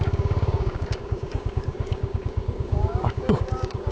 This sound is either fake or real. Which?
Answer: fake